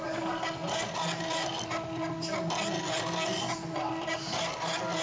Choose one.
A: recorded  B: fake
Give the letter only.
A